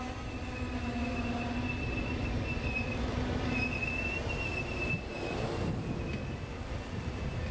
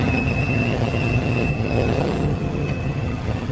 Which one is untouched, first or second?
first